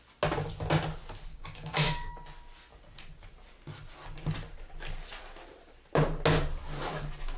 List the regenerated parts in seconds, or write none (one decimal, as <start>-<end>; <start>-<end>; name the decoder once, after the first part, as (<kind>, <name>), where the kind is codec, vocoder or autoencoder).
1.3-2.1 (codec, DAC)